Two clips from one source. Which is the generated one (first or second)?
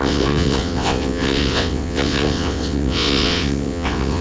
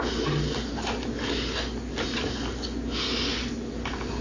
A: first